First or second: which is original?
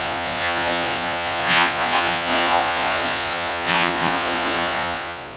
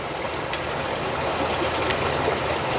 second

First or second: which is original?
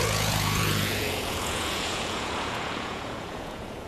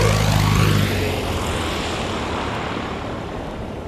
second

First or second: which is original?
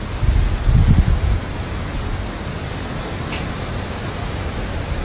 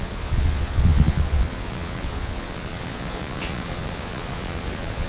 first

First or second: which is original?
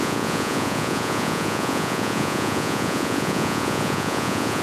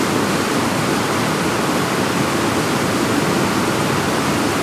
second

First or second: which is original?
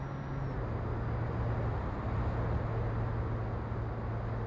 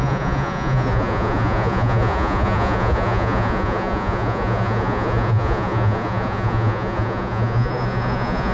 first